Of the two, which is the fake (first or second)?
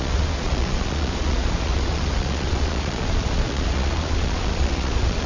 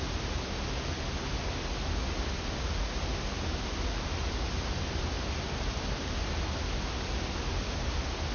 first